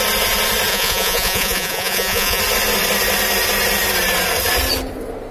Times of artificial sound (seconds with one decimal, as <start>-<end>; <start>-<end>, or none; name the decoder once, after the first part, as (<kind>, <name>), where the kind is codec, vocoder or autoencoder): 0.7-2.4 (vocoder, Vocos)